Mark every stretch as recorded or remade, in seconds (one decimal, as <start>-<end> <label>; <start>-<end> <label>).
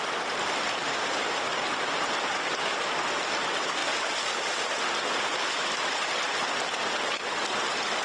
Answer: 0.0-8.0 recorded